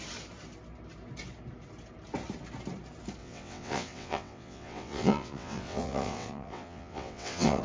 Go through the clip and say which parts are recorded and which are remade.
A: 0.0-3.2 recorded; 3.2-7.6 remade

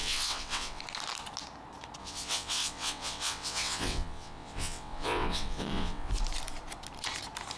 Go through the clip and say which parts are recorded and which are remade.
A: 0.0-0.8 remade; 0.8-2.0 recorded; 2.0-6.1 remade; 6.1-7.6 recorded

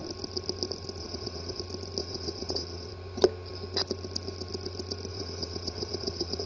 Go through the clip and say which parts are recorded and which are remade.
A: 0.0-1.0 recorded; 1.0-1.6 remade; 1.6-2.0 recorded; 2.0-2.9 remade; 2.9-5.1 recorded; 5.1-6.5 remade

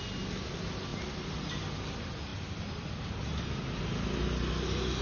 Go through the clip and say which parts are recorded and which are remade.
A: 0.0-5.0 recorded

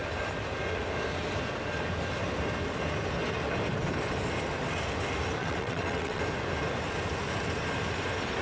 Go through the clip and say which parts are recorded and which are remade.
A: 0.0-5.4 recorded; 5.4-6.2 remade; 6.2-8.4 recorded

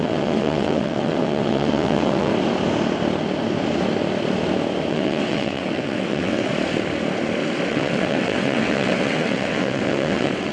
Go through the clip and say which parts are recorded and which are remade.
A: 0.0-2.3 remade; 2.3-4.9 recorded; 4.9-6.5 remade; 6.5-7.7 recorded; 7.7-10.5 remade

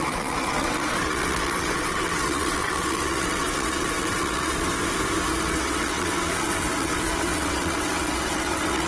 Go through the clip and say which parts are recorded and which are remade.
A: 0.0-4.7 remade; 4.7-5.4 recorded; 5.4-8.9 remade